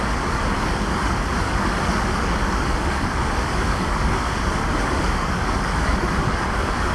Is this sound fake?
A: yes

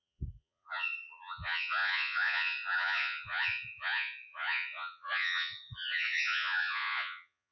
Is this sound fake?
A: yes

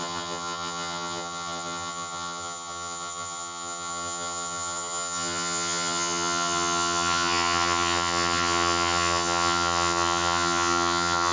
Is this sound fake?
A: yes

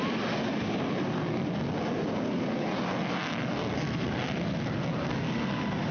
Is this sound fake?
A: no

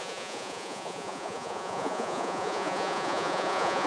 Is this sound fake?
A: yes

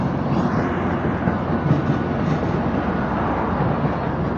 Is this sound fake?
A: no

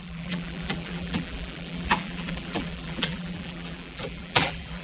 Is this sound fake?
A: yes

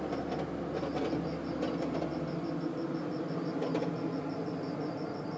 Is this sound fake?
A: no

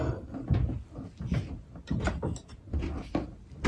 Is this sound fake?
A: no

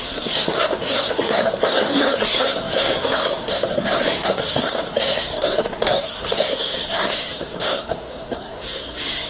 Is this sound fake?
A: yes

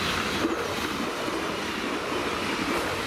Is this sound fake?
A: no